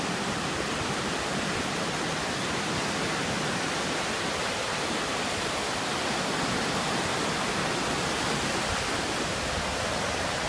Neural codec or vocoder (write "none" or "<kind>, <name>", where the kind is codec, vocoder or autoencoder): none